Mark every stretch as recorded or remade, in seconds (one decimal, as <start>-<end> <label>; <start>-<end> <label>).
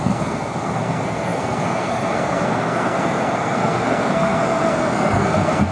0.0-5.7 remade